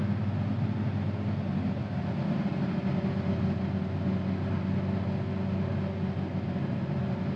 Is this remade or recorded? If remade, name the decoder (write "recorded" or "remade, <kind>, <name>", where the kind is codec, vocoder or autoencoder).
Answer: recorded